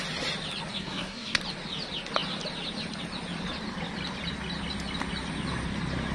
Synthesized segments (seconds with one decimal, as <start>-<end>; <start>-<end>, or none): 0.7-1.4